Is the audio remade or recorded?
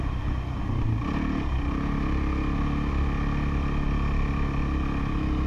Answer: recorded